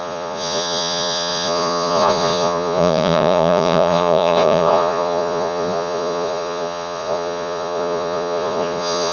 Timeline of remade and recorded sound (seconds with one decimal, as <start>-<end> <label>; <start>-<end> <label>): 0.0-9.1 remade